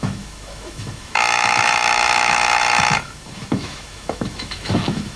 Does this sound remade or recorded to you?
remade